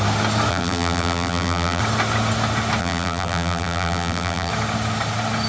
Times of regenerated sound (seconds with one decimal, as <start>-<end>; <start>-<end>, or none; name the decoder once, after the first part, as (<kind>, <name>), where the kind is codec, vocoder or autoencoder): 0.5-1.8 (vocoder, BigVGAN v2); 2.8-4.5